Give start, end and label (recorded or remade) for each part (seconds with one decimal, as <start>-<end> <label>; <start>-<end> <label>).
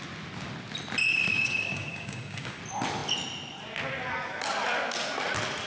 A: 0.0-1.1 recorded; 1.1-2.6 remade; 2.6-5.7 recorded